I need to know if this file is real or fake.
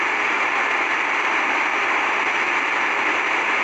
real